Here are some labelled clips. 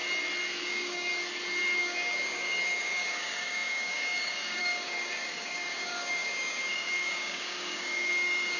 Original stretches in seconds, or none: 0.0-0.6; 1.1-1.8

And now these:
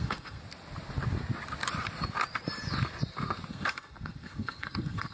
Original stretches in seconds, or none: 0.4-3.5

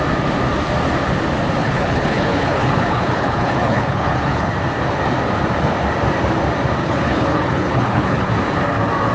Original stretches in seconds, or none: 0.0-1.6; 4.5-6.8; 8.3-9.1

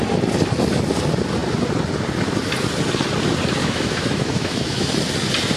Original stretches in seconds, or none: 0.0-3.6; 4.9-5.6